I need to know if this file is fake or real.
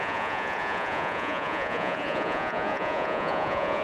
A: fake